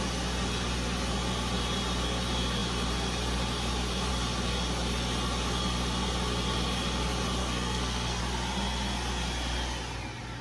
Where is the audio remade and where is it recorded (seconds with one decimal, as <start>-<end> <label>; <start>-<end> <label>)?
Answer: 0.0-7.4 recorded; 7.4-8.2 remade; 8.2-10.4 recorded